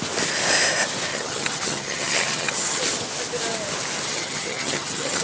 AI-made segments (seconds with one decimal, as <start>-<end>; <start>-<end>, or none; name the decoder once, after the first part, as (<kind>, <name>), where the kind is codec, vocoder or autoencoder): 1.1-2.8 (vocoder, HiFi-GAN); 4.1-5.2